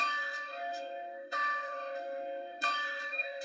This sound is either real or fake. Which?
fake